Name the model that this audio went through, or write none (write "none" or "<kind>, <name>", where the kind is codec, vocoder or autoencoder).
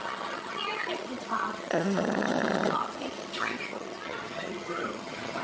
vocoder, HiFi-GAN